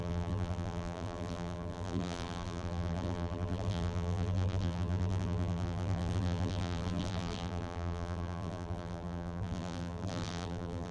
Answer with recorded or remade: remade